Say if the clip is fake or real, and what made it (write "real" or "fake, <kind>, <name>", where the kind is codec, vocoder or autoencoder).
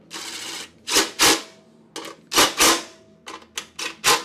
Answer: real